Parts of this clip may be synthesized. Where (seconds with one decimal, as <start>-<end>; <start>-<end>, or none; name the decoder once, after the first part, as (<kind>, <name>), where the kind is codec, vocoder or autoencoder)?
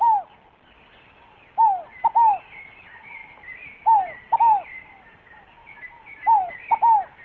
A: 3.2-4.4 (vocoder, BigVGAN v2); 5.6-6.5